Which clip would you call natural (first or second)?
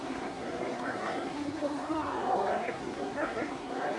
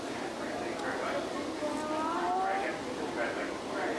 second